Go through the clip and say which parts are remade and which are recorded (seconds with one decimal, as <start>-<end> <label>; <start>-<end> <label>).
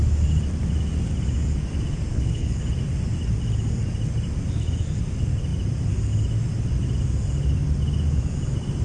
0.0-2.1 recorded; 2.1-2.6 remade; 2.6-8.8 recorded